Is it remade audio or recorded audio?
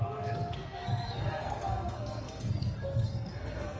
remade